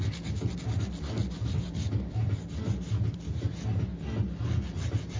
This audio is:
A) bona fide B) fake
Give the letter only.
A